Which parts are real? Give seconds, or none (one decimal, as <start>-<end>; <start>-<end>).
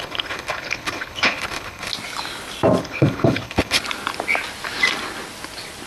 1.9-2.8; 3.8-5.9